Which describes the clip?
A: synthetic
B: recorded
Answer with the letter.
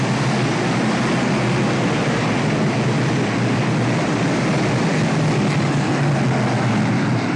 B